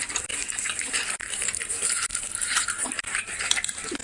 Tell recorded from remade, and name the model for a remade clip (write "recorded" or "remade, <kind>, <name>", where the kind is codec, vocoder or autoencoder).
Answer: recorded